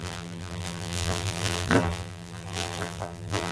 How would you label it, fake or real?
fake